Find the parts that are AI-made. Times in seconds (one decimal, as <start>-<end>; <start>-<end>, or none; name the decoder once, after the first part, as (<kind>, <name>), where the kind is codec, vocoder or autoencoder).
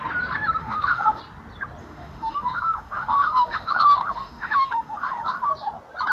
0.6-1.2 (autoencoder, DAC-VAE); 1.8-5.5